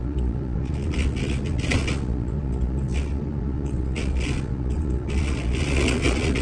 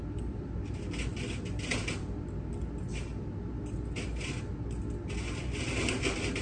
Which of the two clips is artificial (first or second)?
first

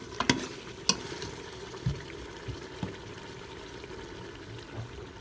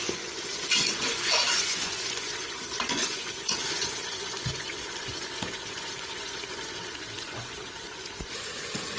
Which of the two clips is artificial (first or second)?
second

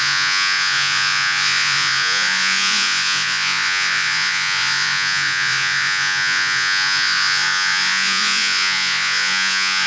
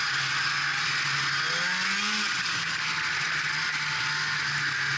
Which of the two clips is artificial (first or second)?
first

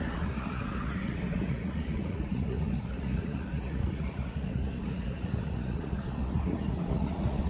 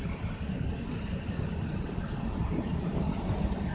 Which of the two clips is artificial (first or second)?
first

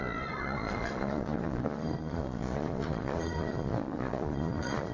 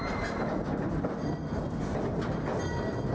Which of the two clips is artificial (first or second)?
first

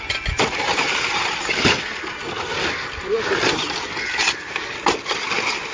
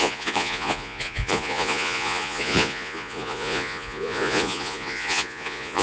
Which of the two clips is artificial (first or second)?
second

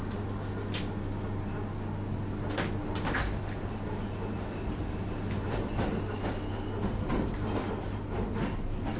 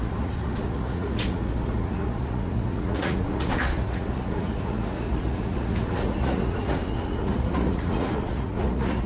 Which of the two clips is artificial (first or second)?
second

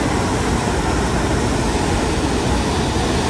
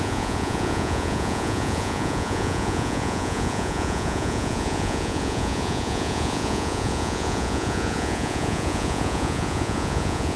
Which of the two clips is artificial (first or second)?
second